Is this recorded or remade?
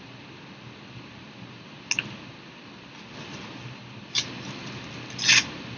recorded